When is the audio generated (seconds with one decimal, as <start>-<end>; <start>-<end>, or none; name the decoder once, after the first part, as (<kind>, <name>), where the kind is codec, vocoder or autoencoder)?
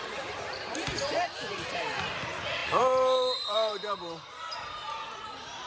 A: 0.0-0.9 (vocoder, BigVGAN v2); 1.7-5.7